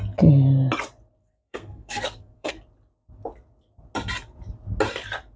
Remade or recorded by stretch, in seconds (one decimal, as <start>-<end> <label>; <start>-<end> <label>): 0.0-1.2 recorded; 1.2-2.5 remade; 2.5-5.4 recorded